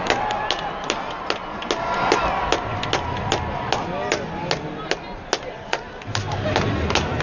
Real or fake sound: real